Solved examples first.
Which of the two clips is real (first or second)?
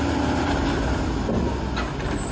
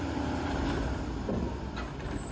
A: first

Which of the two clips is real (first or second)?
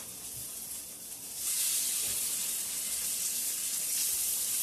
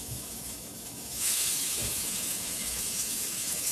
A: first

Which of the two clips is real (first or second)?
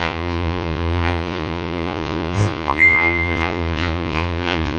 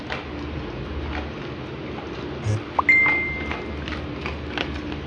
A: second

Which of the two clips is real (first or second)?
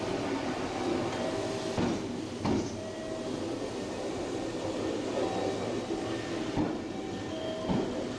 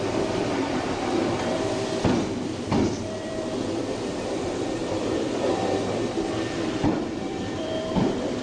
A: first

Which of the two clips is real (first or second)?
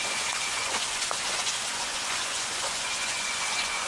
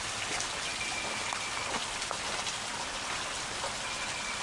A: second